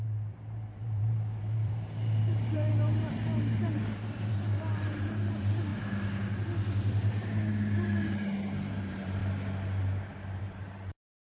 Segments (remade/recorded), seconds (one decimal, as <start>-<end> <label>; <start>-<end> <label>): 0.0-5.7 remade; 5.7-8.7 recorded; 8.7-9.2 remade; 9.2-10.4 recorded; 10.4-11.4 remade